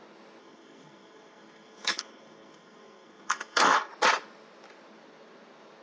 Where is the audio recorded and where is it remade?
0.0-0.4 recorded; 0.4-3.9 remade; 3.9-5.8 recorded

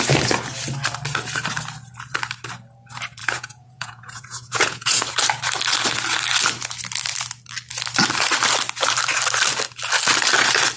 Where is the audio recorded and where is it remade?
0.0-3.2 recorded; 3.2-5.0 remade; 5.0-10.8 recorded

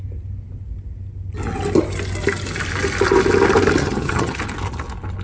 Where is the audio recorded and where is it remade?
0.0-3.8 recorded; 3.8-4.4 remade; 4.4-5.2 recorded